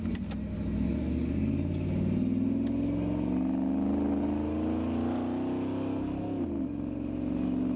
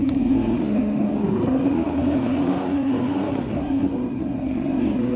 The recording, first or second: first